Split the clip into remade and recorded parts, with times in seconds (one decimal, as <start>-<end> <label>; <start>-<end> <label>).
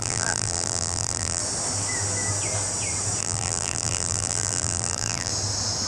0.0-1.4 remade; 1.4-3.2 recorded; 3.2-5.3 remade; 5.3-5.9 recorded